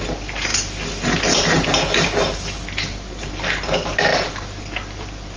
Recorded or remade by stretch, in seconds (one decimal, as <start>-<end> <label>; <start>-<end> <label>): 0.0-5.4 recorded